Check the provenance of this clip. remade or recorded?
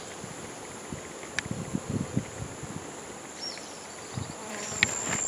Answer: remade